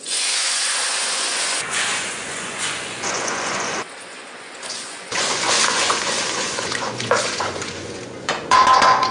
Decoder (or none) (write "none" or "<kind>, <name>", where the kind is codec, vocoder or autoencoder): vocoder, Vocos